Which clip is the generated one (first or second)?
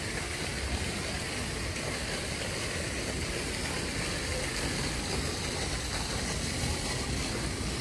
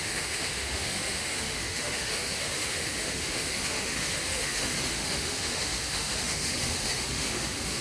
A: second